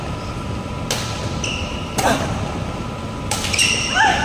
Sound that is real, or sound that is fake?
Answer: real